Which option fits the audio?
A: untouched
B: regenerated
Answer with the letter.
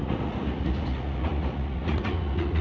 B